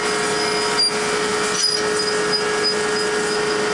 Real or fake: real